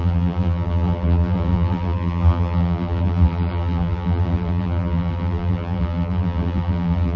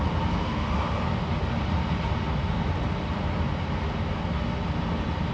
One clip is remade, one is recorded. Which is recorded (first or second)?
second